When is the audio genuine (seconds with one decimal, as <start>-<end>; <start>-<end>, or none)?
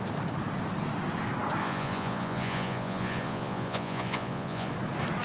0.0-1.6; 4.7-5.2